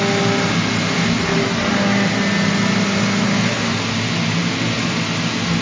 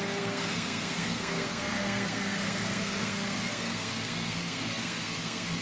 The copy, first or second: second